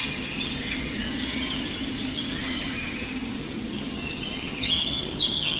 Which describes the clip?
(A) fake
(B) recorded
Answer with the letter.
A